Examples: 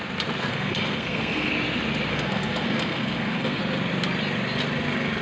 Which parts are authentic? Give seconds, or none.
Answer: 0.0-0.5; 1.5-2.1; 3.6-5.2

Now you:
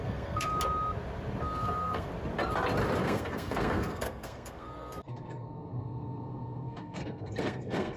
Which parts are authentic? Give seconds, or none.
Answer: 0.5-1.4; 2.1-3.0

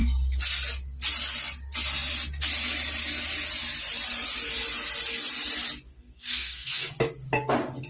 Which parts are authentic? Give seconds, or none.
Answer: 0.0-5.9; 6.9-7.9

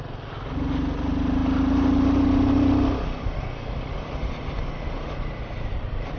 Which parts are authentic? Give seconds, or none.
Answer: 0.0-6.2

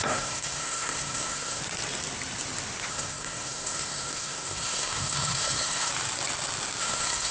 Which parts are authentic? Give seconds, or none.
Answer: 1.6-2.9; 5.9-6.8

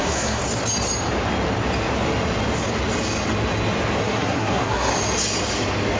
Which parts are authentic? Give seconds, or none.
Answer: 0.4-4.0; 4.9-6.0